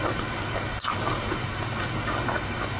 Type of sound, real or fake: real